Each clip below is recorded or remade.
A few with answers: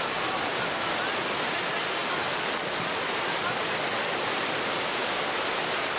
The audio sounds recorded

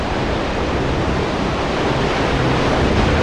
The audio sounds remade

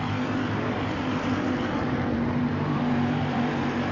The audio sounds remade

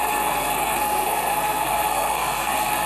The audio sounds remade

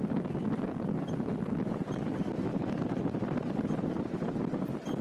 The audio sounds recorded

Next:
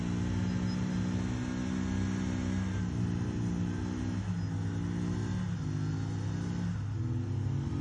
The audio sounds recorded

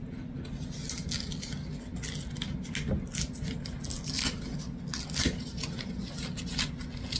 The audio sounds recorded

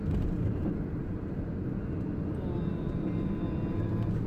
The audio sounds recorded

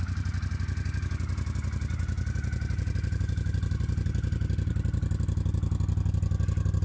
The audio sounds recorded